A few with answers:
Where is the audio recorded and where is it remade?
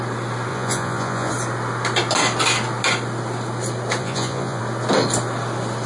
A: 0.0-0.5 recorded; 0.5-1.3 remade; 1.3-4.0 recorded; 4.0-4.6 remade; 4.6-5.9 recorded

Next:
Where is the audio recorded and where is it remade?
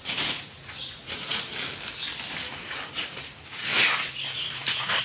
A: 0.0-1.5 remade; 1.5-2.7 recorded; 2.7-3.7 remade; 3.7-4.5 recorded; 4.5-5.0 remade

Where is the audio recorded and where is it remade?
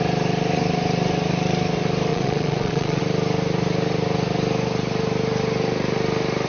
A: 0.0-2.1 recorded; 2.1-3.0 remade; 3.0-6.5 recorded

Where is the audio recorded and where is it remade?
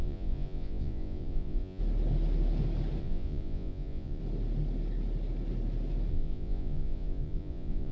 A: 0.0-1.8 remade; 1.8-3.0 recorded; 3.0-4.2 remade; 4.2-6.1 recorded; 6.1-7.9 remade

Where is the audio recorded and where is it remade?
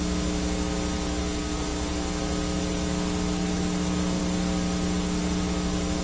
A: 0.0-6.0 recorded